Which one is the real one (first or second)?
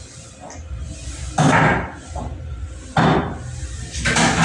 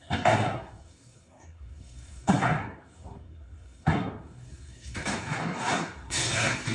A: first